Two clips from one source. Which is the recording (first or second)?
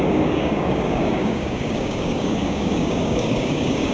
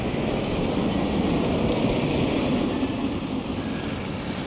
second